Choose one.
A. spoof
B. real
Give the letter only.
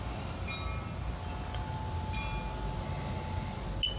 B